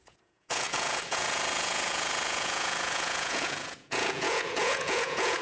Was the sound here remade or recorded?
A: remade